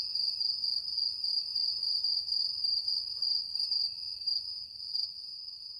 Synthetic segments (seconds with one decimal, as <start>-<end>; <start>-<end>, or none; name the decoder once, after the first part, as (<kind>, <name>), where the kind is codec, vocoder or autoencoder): 1.3-4.3 (vocoder, BigVGAN v2); 5.2-5.8